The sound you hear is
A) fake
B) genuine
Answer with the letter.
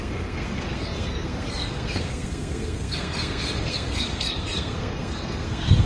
A